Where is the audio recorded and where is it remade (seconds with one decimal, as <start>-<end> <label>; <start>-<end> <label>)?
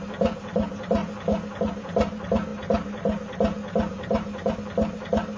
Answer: 0.0-1.0 remade; 1.0-1.6 recorded; 1.6-5.4 remade